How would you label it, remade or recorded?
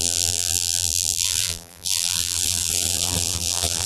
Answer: remade